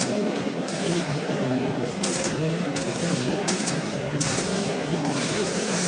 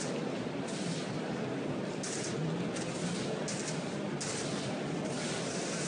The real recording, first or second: second